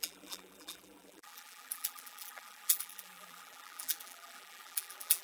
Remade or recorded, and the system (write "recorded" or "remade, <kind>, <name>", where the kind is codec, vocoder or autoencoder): remade, vocoder, BigVGAN v2